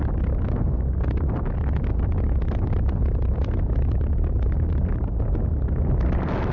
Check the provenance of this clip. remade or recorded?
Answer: recorded